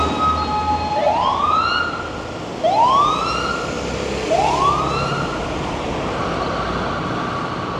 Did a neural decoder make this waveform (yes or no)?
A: no